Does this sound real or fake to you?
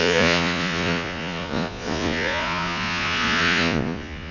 fake